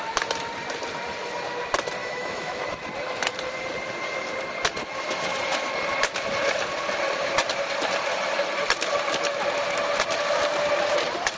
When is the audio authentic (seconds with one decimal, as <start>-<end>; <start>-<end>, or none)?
0.0-2.0; 2.6-11.4